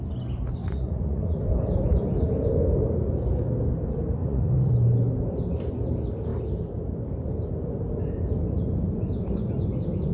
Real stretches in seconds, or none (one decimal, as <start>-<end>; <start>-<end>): 0.0-0.6; 1.4-4.2; 4.7-10.1